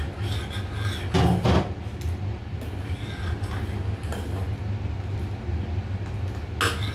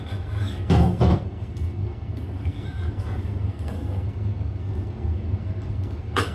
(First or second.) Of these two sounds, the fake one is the second